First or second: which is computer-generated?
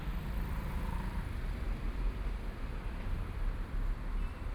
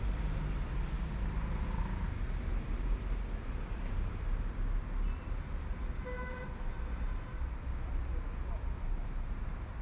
first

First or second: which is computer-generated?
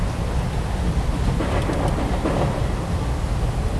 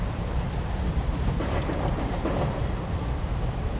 second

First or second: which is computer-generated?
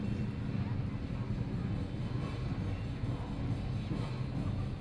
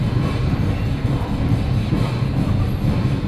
second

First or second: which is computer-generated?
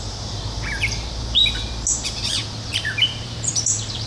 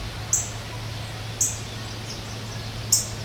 first